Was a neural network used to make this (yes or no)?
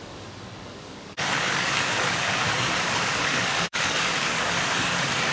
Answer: yes